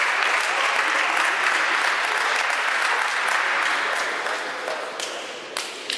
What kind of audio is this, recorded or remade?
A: recorded